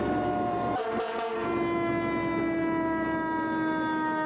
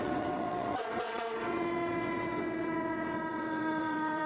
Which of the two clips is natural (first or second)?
first